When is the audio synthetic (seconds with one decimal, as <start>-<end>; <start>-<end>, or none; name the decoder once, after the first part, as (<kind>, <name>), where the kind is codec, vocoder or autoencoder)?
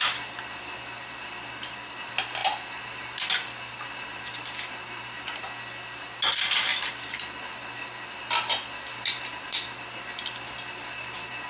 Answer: none